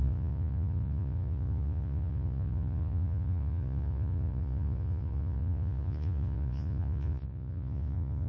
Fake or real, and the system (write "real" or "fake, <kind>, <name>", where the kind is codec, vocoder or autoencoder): fake, vocoder, Vocos